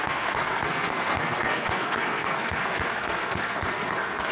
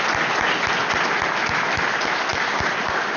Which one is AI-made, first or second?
first